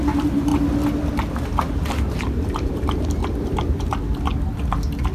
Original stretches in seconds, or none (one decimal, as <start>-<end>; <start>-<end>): 0.5-1.3; 3.2-5.1